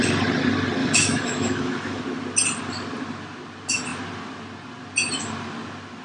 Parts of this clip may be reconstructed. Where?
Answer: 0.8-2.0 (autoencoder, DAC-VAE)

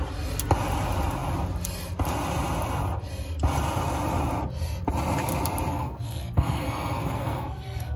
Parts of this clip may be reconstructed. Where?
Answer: 5.7-8.0 (codec, SNAC)